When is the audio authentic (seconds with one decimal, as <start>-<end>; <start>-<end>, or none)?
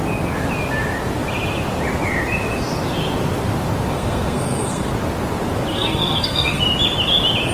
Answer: 0.0-3.9; 4.9-5.7; 6.6-7.5